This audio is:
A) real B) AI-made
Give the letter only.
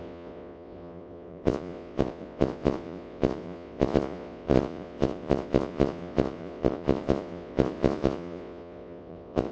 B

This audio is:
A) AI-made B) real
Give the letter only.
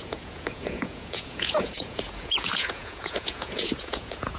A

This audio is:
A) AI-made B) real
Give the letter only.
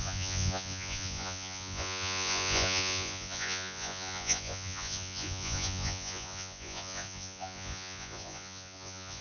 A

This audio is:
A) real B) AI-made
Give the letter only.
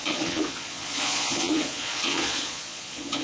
B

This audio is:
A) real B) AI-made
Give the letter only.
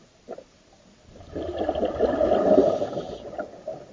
A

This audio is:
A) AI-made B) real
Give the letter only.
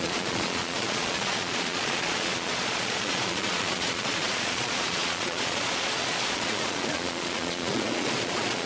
A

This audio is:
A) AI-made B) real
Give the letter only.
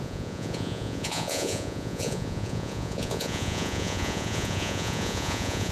A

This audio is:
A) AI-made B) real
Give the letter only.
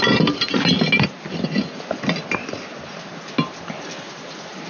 B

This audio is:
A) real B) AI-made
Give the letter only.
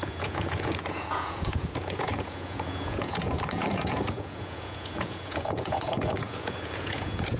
B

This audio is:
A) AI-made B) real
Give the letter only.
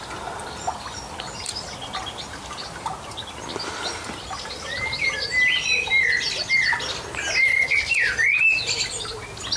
B